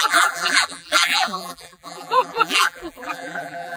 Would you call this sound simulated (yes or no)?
yes